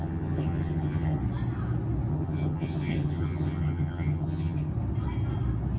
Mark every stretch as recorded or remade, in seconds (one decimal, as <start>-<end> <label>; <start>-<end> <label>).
0.0-1.2 remade; 1.2-2.1 recorded; 2.1-4.7 remade; 4.7-5.8 recorded